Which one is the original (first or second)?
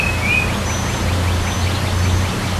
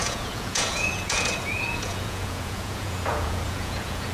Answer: first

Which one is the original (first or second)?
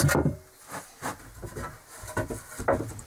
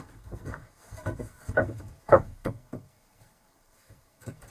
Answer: first